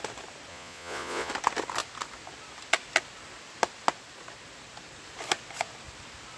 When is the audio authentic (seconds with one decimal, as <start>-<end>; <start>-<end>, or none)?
0.0-0.5; 1.3-6.4